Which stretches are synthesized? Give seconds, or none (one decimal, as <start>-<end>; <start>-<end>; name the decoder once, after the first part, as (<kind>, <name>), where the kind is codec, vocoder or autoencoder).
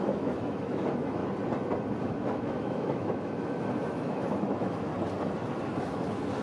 0.0-1.2 (autoencoder, DAC-VAE); 2.0-4.9; 5.6-6.4